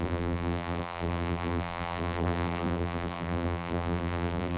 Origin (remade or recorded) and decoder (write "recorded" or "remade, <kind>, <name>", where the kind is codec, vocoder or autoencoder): remade, vocoder, BigVGAN v2